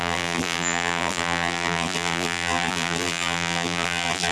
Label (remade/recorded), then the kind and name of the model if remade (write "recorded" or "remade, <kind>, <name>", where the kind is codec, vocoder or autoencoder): remade, vocoder, BigVGAN v2